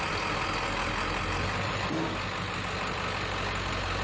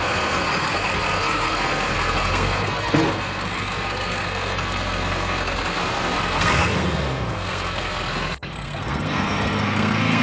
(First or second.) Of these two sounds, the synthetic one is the second